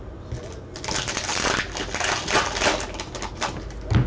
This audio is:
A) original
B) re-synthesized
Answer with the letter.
A